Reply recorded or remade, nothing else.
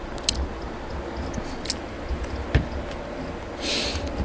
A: recorded